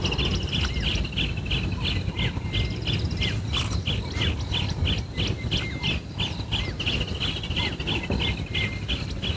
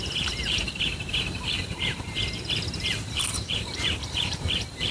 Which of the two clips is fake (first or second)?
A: second